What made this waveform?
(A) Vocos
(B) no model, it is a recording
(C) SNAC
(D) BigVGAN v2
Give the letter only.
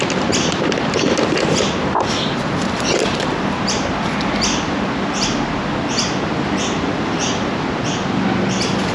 B